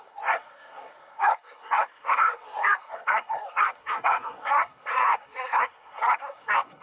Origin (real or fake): fake